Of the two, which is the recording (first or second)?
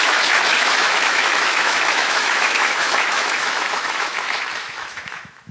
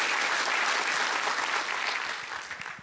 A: second